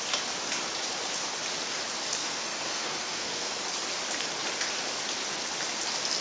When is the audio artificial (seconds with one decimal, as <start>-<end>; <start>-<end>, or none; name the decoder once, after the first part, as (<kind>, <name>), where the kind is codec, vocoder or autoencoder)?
2.2-3.6 (codec, SNAC)